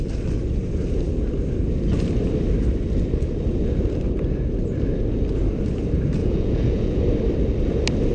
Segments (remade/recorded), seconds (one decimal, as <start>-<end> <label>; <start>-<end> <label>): 0.0-6.2 recorded; 6.2-7.0 remade; 7.0-8.1 recorded